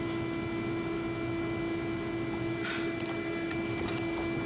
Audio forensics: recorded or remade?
recorded